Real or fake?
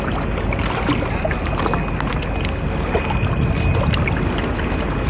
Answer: real